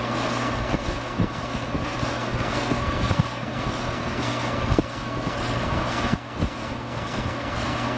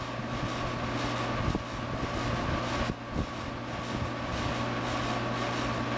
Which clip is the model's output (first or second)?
first